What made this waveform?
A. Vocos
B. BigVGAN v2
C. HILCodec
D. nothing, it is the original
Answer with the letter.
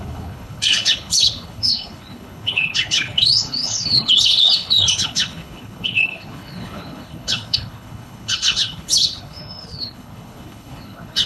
C